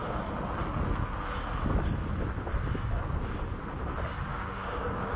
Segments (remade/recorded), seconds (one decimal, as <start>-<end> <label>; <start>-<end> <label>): 0.0-4.3 recorded; 4.3-5.2 remade